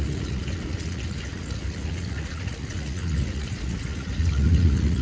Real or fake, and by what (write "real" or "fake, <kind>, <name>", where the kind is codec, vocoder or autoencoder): fake, vocoder, Vocos